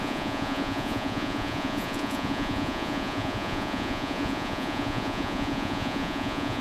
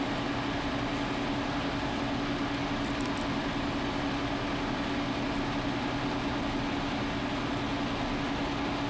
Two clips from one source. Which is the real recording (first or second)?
second